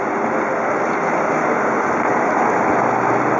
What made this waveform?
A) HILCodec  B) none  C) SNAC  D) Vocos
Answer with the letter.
B